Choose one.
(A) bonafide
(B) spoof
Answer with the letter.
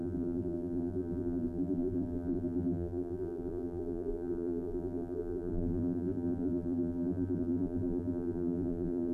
B